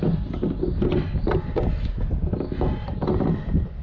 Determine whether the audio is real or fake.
real